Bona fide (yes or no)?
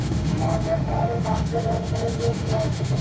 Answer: no